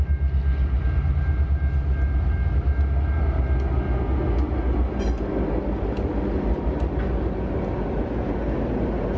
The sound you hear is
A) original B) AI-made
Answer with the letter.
A